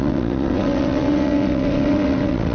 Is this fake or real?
fake